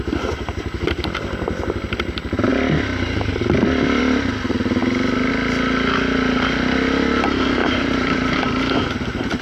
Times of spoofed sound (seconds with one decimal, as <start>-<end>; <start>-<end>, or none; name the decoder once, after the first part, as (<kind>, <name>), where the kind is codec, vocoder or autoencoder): 7.6-8.5 (vocoder, BigVGAN v2)